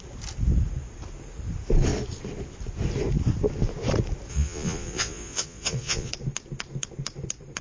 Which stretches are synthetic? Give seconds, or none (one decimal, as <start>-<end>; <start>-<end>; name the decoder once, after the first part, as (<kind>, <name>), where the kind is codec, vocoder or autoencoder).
4.3-6.1 (vocoder, Vocos)